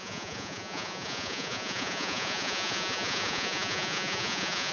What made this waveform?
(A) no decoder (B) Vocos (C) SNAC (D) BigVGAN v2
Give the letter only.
B